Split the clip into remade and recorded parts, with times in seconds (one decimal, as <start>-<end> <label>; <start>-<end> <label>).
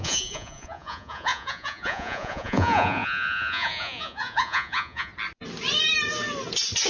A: 0.0-5.1 remade; 5.1-6.9 recorded